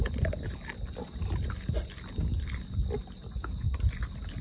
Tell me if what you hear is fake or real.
real